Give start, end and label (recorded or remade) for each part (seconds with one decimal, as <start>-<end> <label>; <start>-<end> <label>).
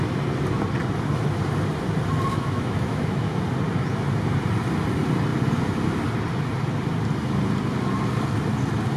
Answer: 0.0-2.3 recorded; 2.3-3.4 remade; 3.4-9.0 recorded